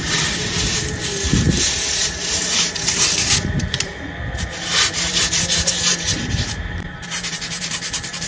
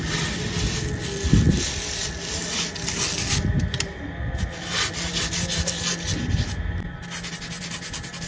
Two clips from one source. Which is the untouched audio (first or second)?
second